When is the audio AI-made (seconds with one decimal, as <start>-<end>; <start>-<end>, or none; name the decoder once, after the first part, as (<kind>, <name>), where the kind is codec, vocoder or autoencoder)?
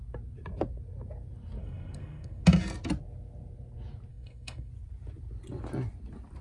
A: 1.6-2.4 (codec, SNAC); 4.1-4.7